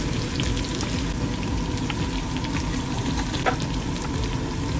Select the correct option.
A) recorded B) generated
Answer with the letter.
A